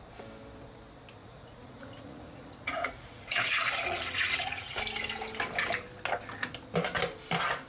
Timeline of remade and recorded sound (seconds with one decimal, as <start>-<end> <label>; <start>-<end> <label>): 0.0-1.2 recorded; 1.2-4.8 remade; 4.8-7.7 recorded